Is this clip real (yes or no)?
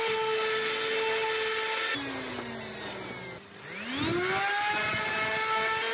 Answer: yes